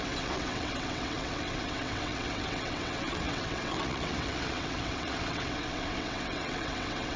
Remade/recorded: remade